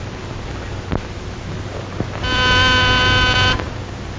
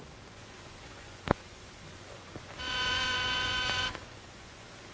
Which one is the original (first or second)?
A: first